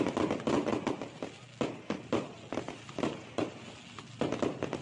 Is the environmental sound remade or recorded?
recorded